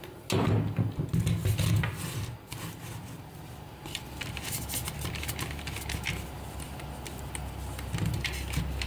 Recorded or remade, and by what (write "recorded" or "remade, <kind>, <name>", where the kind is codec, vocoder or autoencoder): recorded